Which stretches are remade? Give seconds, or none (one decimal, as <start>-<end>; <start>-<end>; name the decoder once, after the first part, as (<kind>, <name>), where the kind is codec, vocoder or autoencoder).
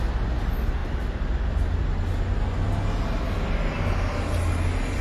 none